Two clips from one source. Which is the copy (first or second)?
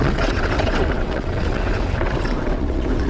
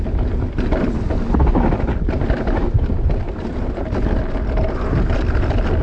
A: first